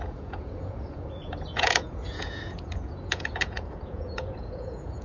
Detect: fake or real fake